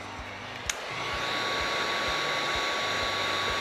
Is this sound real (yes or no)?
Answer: yes